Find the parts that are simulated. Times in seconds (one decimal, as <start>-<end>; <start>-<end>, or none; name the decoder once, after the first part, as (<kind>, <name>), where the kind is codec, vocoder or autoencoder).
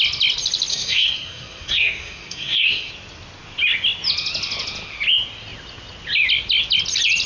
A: 0.7-2.9 (codec, SNAC)